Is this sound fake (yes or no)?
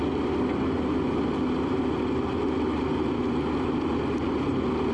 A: no